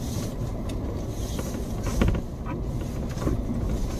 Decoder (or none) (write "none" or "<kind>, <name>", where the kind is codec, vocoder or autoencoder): none